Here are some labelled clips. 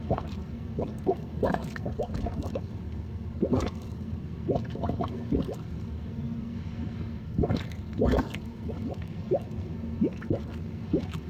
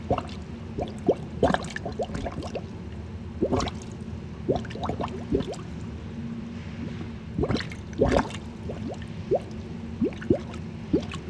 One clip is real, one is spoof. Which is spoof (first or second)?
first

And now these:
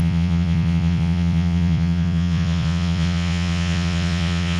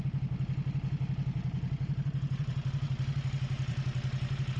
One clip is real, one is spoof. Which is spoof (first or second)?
first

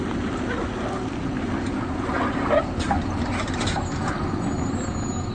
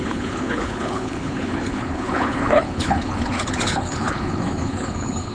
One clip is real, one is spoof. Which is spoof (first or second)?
second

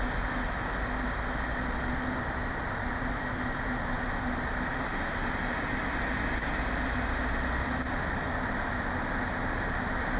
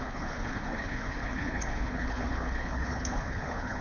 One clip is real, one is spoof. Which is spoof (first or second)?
second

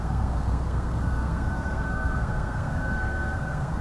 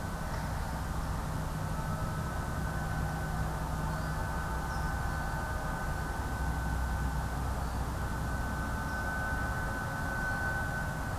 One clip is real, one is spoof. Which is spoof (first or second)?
first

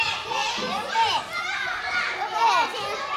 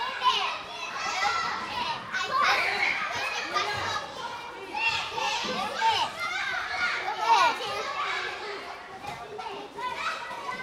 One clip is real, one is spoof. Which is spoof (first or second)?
second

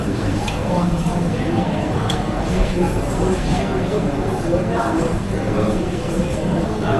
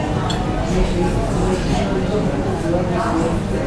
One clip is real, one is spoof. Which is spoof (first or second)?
first